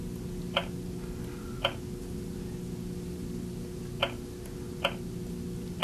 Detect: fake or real real